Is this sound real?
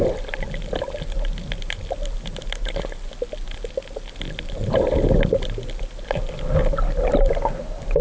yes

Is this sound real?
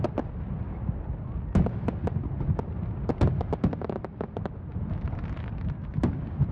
yes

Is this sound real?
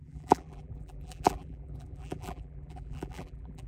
no